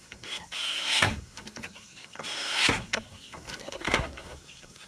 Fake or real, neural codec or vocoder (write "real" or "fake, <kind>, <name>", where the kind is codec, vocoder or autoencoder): fake, codec, SNAC